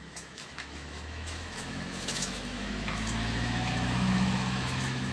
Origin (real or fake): fake